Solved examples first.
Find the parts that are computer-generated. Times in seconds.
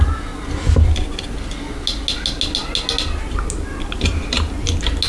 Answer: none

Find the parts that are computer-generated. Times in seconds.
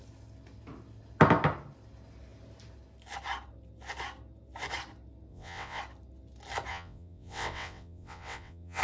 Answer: 5.3-5.8 (vocoder, WaveNeXt); 6.7-8.8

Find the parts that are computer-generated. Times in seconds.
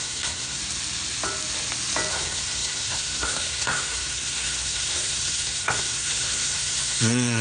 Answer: 0.0-0.6 (codec, SNAC); 2.1-7.4